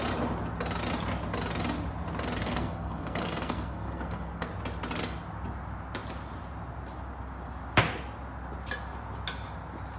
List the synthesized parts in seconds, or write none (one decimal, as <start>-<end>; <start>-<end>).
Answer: 2.4-4.5